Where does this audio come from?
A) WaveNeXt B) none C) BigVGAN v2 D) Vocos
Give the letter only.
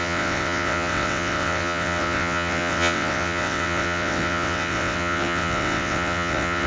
A